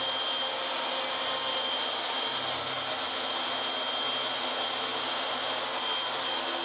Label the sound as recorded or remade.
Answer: recorded